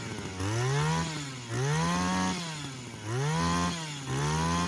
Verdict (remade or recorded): recorded